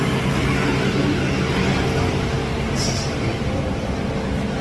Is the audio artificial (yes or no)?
no